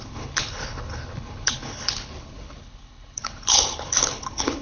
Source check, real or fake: fake